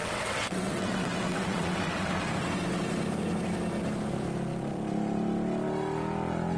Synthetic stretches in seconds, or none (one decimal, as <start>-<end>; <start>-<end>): 0.0-2.2